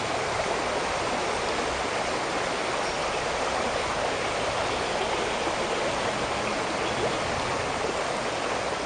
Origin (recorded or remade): recorded